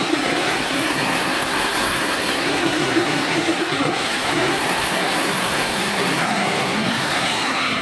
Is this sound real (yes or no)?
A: no